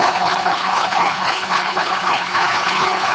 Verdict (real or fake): fake